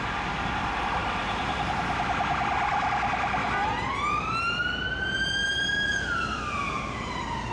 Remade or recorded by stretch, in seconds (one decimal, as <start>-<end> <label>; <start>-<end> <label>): 0.0-1.0 recorded; 1.0-1.7 remade; 1.7-5.4 recorded; 5.4-7.5 remade